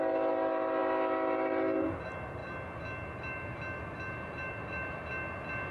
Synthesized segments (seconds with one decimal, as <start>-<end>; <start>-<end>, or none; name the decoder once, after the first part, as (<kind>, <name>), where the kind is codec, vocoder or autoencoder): none

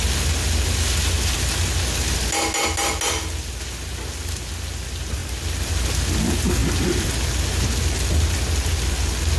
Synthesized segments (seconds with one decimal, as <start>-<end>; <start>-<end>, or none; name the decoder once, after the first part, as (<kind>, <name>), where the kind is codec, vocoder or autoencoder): none

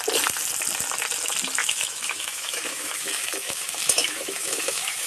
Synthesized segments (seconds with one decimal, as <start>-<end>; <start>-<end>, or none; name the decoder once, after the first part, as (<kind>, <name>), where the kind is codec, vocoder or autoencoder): 1.6-5.1 (autoencoder, DAC-VAE)

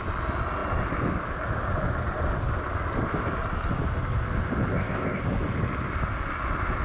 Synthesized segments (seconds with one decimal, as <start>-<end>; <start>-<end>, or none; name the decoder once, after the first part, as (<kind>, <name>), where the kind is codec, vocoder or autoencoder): 4.7-5.2 (codec, ZipCodec)

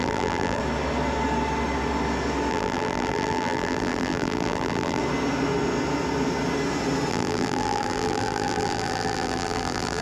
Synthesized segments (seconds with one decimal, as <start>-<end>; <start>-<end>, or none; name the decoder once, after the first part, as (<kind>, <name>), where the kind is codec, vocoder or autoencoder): 0.0-0.6 (vocoder, BigVGAN v2); 2.5-5.0; 7.1-10.0

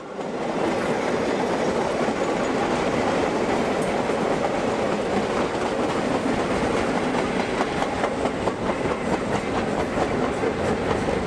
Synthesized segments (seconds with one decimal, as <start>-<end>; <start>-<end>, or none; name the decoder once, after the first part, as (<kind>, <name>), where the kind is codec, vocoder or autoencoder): none

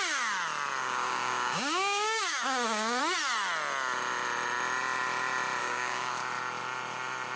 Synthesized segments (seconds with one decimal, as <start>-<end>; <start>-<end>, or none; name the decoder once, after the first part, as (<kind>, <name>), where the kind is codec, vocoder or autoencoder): 0.8-3.0 (codec, DAC); 5.6-6.1